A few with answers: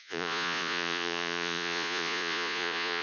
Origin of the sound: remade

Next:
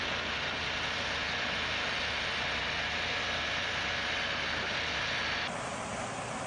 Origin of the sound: recorded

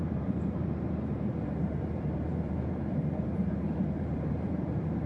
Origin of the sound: remade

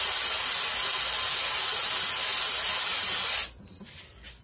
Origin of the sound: recorded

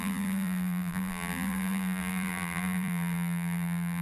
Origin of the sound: remade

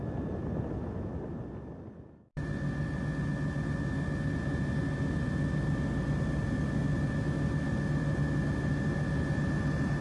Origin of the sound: recorded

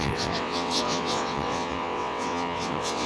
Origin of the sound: remade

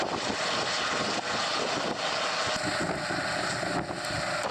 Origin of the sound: recorded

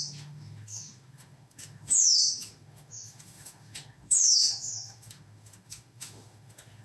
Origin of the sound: remade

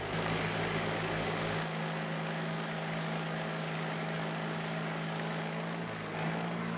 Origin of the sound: remade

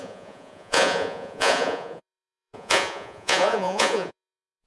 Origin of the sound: remade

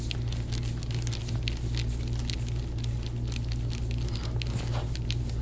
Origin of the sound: recorded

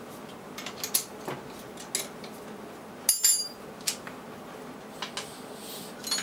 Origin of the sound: recorded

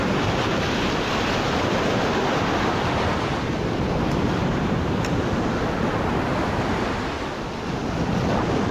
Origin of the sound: recorded